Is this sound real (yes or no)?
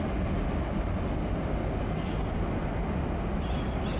yes